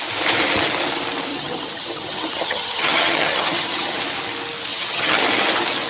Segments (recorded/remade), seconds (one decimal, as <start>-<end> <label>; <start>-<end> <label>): 0.0-1.3 recorded; 1.3-4.0 remade; 4.0-4.7 recorded; 4.7-5.2 remade; 5.2-5.9 recorded